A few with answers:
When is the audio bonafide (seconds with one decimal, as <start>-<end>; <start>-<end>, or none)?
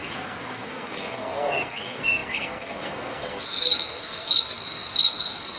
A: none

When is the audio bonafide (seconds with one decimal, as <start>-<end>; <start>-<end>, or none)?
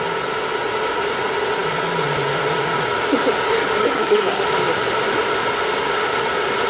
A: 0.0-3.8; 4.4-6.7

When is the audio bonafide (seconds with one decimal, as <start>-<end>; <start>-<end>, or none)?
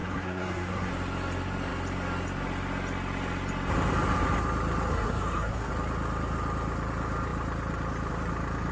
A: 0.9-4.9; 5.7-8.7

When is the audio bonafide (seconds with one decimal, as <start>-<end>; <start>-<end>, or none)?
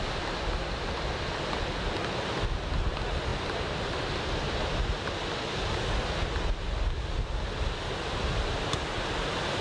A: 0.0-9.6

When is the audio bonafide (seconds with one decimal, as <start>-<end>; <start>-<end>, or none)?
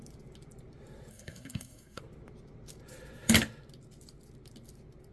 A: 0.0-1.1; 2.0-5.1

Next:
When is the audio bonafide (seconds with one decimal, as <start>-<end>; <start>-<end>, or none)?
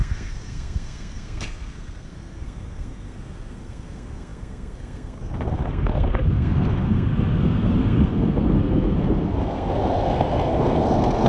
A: none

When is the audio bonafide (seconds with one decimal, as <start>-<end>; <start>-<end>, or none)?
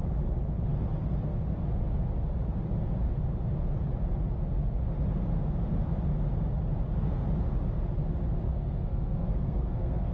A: 0.0-8.5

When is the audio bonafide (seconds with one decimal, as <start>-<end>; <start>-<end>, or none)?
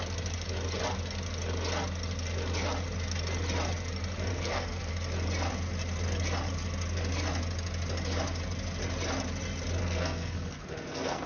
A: 0.0-4.3; 4.9-9.8